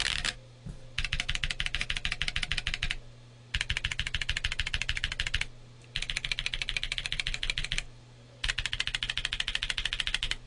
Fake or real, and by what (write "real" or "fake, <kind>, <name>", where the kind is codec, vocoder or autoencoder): real